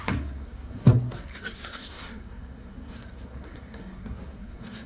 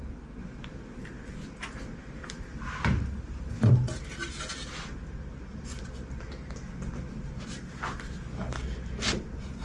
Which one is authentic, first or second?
second